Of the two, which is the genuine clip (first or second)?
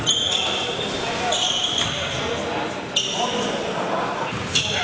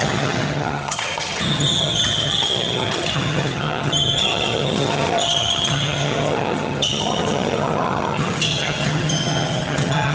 first